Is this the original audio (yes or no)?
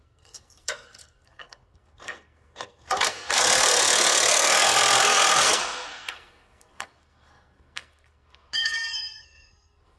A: no